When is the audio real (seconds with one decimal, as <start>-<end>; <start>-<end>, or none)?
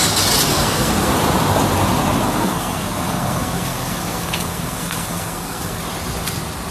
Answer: 0.0-0.5; 1.1-2.2; 5.8-6.7